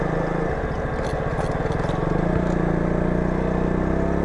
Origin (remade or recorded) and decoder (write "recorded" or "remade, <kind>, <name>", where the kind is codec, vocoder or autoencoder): recorded